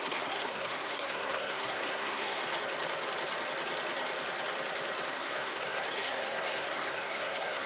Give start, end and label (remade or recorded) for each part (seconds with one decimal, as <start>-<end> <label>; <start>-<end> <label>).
0.0-2.4 remade; 2.4-5.1 recorded; 5.1-7.7 remade